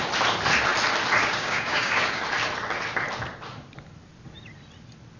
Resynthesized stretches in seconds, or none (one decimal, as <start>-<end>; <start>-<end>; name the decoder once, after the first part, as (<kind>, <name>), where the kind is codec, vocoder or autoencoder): 1.2-2.2 (codec, DAC)